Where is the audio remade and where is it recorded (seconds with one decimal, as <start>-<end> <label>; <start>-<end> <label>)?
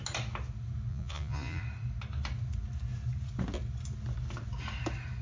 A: 0.0-0.9 recorded; 0.9-1.6 remade; 1.6-5.2 recorded